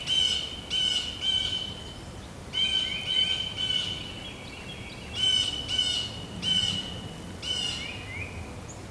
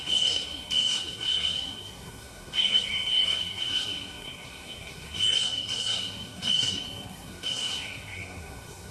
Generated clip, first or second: second